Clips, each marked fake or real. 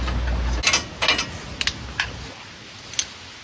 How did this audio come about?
real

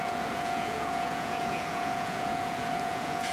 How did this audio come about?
fake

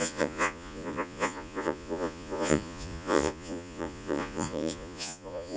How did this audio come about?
fake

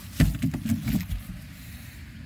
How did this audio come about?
real